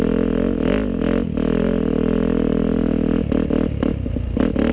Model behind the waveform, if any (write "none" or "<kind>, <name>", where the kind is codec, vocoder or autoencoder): none